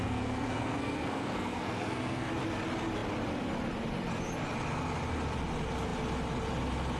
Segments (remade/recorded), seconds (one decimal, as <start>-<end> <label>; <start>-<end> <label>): 0.0-2.3 remade; 2.3-7.0 recorded